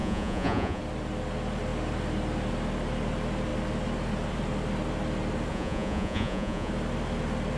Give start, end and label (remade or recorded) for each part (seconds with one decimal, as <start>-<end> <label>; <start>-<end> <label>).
0.0-0.8 remade; 0.8-5.5 recorded; 5.5-6.7 remade; 6.7-7.6 recorded

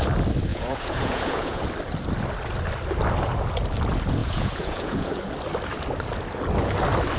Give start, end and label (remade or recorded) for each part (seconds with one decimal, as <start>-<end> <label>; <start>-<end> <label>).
0.0-0.5 recorded; 0.5-1.6 remade; 1.6-4.2 recorded; 4.2-5.3 remade; 5.3-7.2 recorded

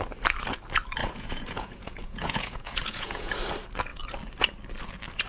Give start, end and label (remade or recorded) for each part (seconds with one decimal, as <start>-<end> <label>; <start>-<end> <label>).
0.0-1.0 recorded; 1.0-3.3 remade; 3.3-5.3 recorded

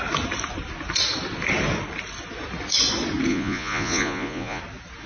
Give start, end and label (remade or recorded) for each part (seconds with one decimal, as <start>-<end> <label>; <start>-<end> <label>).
0.0-3.3 recorded; 3.3-4.6 remade; 4.6-5.1 recorded

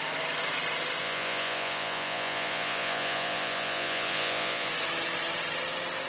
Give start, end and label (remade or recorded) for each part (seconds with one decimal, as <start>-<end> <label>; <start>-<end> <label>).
0.0-1.0 recorded; 1.0-4.7 remade; 4.7-6.1 recorded

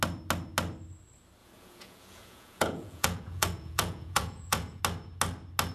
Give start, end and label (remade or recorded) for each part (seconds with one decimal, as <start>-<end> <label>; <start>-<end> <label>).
0.0-1.4 recorded; 1.4-4.8 remade; 4.8-5.7 recorded

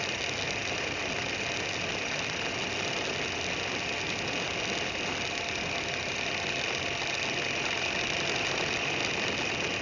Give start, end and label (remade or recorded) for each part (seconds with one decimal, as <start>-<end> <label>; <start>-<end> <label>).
0.0-9.8 recorded